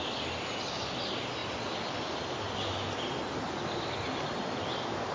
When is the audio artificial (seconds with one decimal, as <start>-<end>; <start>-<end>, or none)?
none

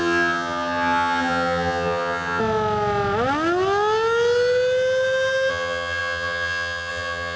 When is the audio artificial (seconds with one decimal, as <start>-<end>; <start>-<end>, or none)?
0.0-2.4; 5.5-7.4

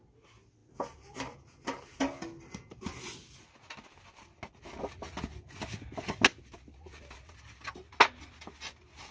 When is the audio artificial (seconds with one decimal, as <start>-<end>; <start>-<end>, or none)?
none

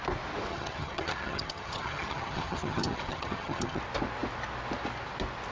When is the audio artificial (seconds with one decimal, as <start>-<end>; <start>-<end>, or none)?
0.5-3.8

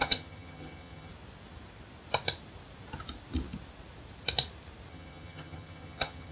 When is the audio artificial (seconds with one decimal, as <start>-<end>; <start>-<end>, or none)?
0.0-1.1; 4.9-6.3

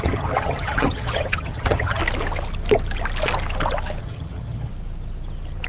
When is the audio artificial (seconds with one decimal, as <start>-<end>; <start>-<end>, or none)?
0.0-2.0; 4.0-4.7